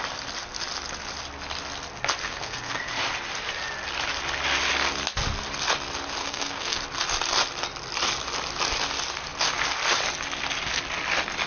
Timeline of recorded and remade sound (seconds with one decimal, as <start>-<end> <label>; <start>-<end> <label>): 0.0-2.2 recorded; 2.2-2.9 remade; 2.9-6.2 recorded; 6.2-6.8 remade; 6.8-11.5 recorded